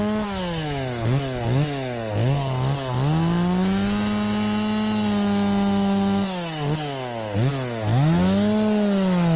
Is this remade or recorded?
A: recorded